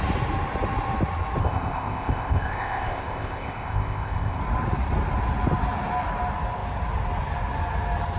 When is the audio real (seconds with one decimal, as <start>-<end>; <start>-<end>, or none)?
0.0-1.4; 4.4-8.2